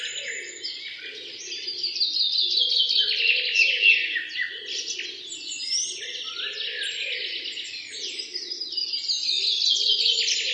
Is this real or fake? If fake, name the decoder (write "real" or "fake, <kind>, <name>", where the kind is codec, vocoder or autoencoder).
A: real